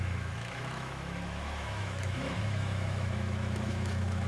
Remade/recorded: remade